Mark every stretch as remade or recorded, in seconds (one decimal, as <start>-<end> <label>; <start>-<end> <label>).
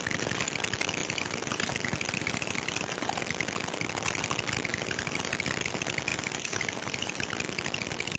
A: 0.0-1.0 recorded; 1.0-3.2 remade; 3.2-4.7 recorded; 4.7-5.3 remade; 5.3-6.1 recorded; 6.1-7.3 remade; 7.3-8.2 recorded